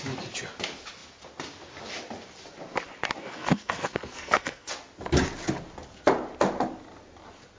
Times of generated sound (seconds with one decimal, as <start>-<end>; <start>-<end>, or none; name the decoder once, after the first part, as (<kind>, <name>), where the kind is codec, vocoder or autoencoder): 3.2-4.7 (codec, SNAC)